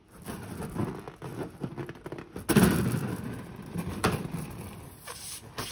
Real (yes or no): yes